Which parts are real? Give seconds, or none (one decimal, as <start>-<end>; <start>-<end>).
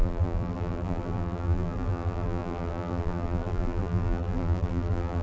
none